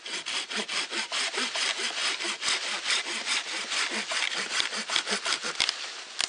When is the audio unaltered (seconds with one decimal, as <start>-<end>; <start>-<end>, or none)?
0.0-6.3